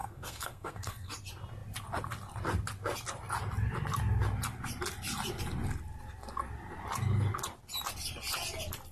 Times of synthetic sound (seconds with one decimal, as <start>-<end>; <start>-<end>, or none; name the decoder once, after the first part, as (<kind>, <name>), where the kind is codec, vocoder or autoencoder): 0.0-1.1 (codec, SNAC)